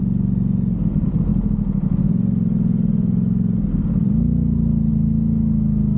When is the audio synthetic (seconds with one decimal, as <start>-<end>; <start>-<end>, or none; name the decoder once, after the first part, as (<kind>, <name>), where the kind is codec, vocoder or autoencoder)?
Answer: none